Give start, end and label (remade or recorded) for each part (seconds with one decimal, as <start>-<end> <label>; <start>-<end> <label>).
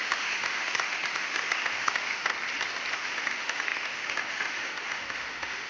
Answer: 0.0-2.3 remade; 2.3-2.9 recorded; 2.9-5.7 remade